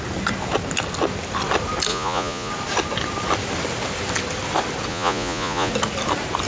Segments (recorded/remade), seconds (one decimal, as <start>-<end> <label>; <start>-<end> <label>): 0.0-1.9 recorded; 1.9-2.5 remade; 2.5-4.9 recorded; 4.9-5.7 remade; 5.7-6.5 recorded